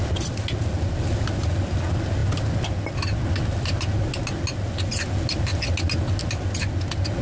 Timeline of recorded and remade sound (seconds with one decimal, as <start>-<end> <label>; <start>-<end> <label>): 0.0-7.2 recorded